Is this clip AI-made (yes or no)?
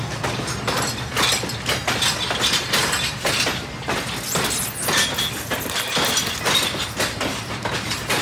no